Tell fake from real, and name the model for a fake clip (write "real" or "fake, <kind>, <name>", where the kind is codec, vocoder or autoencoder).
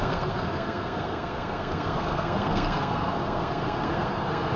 fake, codec, SNAC